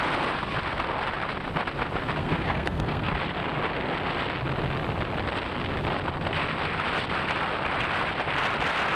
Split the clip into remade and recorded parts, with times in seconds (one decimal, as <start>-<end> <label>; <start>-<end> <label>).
0.0-2.2 recorded; 2.2-3.1 remade; 3.1-9.0 recorded